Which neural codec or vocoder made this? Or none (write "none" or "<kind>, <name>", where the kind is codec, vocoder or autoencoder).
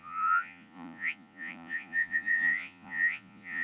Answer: vocoder, Vocos